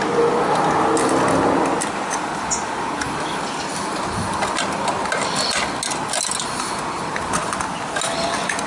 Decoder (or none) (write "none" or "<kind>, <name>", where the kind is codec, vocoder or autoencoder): none